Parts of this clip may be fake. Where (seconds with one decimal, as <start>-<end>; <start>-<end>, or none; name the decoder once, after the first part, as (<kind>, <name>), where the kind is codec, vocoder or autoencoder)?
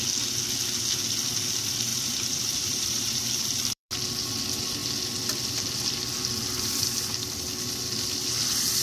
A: 1.9-3.9 (vocoder, BigVGAN v2)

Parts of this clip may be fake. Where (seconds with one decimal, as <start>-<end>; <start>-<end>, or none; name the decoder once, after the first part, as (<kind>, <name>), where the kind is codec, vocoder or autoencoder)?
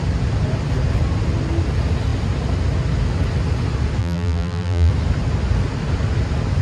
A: 4.0-4.9 (vocoder, BigVGAN v2)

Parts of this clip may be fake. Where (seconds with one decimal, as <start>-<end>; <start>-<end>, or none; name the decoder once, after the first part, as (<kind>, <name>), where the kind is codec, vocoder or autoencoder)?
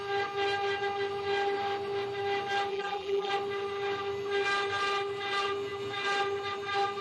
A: 2.7-3.3 (vocoder, BigVGAN v2)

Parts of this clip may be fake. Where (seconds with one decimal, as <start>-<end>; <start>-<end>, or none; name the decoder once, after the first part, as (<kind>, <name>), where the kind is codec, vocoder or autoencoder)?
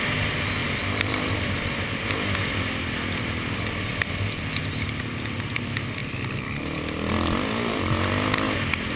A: 0.6-1.3 (vocoder, BigVGAN v2); 3.9-4.6; 6.0-7.1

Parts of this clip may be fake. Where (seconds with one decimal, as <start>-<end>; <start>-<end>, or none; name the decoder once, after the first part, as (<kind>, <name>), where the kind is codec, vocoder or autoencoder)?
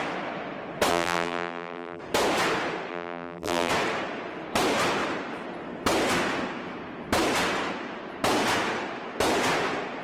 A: 0.9-2.0 (vocoder, BigVGAN v2); 2.9-3.7